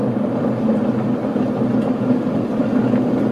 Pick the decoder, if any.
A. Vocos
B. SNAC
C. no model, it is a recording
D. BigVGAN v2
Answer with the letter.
C